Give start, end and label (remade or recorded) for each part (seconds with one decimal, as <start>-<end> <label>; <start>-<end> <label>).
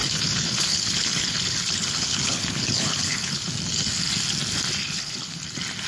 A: 0.0-3.5 remade; 3.5-4.8 recorded; 4.8-5.4 remade; 5.4-5.9 recorded